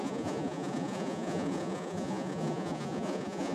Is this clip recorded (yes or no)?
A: no